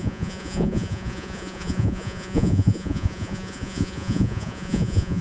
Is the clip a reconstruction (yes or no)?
yes